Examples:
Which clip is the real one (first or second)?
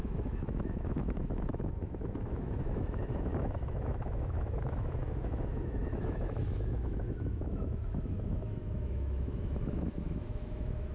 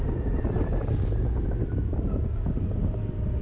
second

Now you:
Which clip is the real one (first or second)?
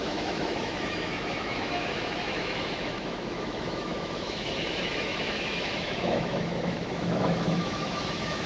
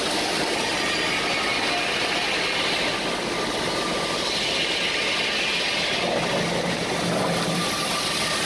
second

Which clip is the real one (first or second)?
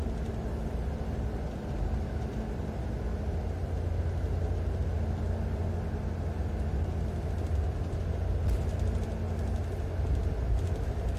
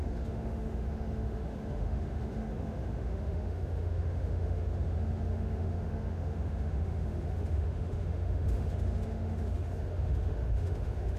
first